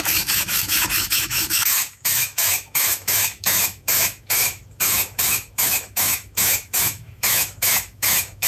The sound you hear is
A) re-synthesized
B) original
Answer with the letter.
A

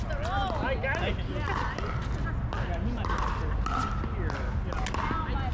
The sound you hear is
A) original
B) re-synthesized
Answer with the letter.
A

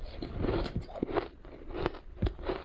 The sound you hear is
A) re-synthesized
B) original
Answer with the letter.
B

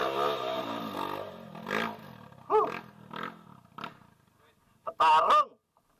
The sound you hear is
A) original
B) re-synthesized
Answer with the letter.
A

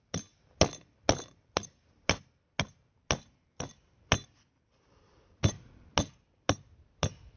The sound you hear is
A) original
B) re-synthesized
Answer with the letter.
A